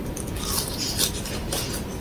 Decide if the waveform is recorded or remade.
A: recorded